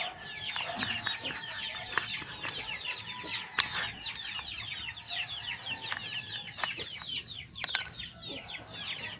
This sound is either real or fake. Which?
real